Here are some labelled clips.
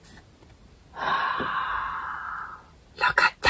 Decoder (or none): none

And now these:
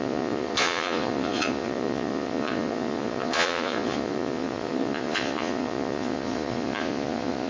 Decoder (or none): vocoder, Vocos